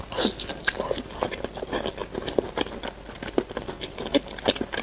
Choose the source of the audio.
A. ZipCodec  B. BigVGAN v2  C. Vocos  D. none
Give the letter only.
D